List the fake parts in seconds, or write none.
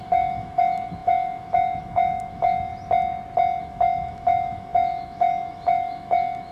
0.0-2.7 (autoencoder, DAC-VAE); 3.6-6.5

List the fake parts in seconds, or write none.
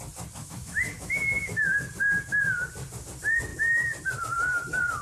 0.4-1.6 (autoencoder, DAC-VAE)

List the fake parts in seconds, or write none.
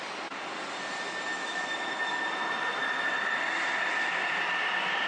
1.3-2.2 (autoencoder, DAC-VAE)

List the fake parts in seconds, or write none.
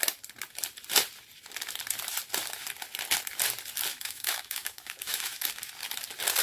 3.9-5.7 (autoencoder, DAC-VAE)